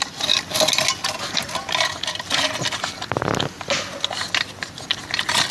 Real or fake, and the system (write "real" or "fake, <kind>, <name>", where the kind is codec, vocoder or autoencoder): real